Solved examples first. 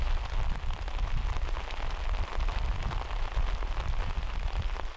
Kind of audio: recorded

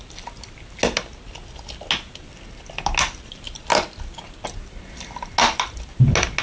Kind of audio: recorded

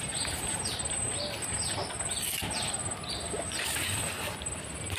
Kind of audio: recorded